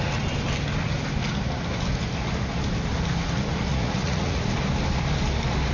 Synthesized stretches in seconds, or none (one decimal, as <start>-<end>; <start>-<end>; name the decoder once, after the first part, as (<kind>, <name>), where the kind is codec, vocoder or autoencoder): 3.7-4.4 (vocoder, Vocos)